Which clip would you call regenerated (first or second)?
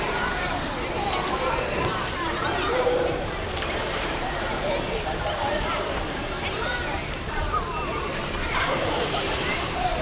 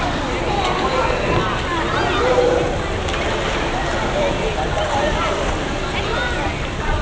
first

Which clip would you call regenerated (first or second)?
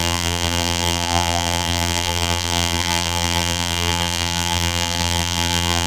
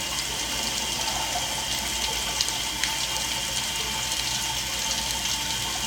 first